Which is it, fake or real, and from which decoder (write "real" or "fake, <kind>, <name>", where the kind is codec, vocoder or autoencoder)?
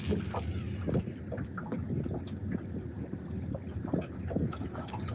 real